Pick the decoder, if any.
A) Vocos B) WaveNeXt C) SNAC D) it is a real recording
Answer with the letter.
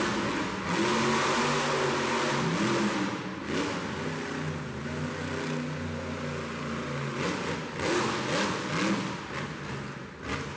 D